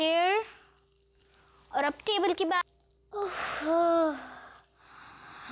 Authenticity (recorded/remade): recorded